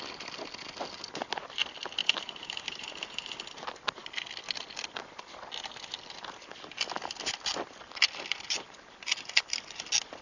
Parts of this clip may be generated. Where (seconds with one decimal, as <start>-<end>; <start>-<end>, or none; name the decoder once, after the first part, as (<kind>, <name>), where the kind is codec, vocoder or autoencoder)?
2.0-3.3 (vocoder, BigVGAN v2)

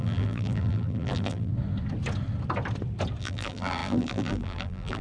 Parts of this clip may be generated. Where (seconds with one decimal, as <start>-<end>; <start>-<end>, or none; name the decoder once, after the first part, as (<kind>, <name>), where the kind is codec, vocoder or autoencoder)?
0.0-1.5 (vocoder, BigVGAN v2); 3.2-5.0

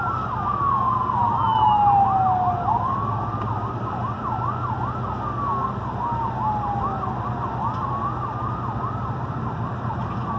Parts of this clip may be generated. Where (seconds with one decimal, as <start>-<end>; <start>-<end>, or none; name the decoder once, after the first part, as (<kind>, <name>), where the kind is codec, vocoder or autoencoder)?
none

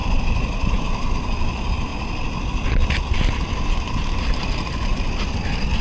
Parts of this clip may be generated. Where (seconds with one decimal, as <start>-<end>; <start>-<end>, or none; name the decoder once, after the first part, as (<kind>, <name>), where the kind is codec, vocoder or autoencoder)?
0.0-1.9 (vocoder, BigVGAN v2)

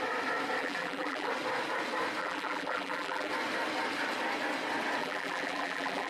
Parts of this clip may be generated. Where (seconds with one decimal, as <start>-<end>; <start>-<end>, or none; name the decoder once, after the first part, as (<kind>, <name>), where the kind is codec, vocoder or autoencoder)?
0.6-1.3 (vocoder, BigVGAN v2); 2.2-3.3; 5.0-6.1

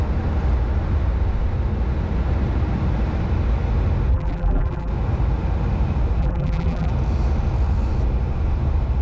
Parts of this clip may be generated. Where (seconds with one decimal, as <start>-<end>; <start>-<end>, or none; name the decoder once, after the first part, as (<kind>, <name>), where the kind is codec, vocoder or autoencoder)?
4.1-4.9 (vocoder, BigVGAN v2); 6.2-6.9

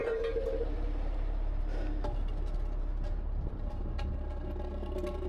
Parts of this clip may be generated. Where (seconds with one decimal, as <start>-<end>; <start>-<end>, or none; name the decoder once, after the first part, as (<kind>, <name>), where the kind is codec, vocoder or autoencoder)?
0.0-1.6 (vocoder, BigVGAN v2); 2.9-3.8